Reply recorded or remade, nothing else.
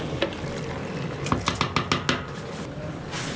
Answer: recorded